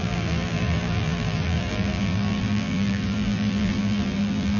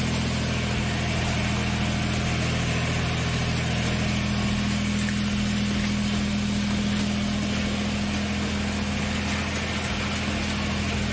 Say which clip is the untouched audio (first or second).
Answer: second